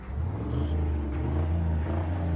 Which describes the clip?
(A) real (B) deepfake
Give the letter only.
A